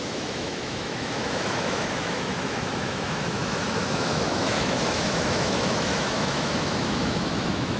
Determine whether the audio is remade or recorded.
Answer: remade